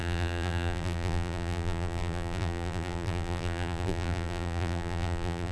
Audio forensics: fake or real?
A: fake